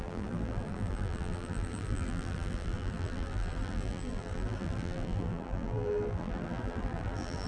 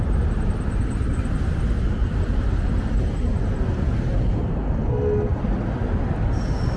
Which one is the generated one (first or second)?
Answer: first